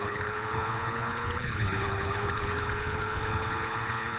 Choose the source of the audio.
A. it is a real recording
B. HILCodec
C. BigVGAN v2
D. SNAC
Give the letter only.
B